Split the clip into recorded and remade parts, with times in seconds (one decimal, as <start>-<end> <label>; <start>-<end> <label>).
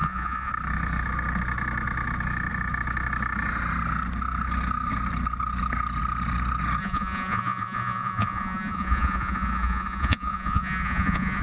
0.0-0.5 remade; 0.5-6.8 recorded; 6.8-11.4 remade